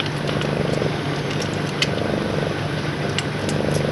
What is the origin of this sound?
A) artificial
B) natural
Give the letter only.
B